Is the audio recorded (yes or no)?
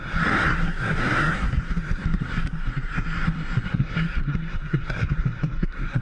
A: no